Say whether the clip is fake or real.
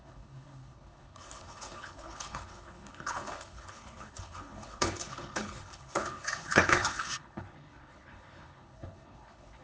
fake